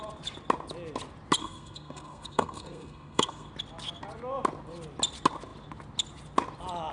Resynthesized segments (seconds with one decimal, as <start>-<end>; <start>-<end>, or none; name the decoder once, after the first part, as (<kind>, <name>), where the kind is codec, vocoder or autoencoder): 1.4-3.5 (codec, SNAC)

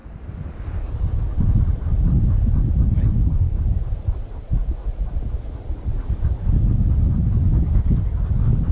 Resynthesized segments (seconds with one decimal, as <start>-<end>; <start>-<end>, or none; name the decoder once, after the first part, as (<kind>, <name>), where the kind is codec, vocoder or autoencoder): none